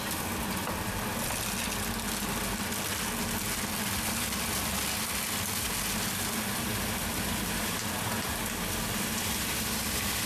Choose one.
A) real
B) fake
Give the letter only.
A